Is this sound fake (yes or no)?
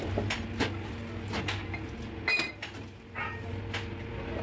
no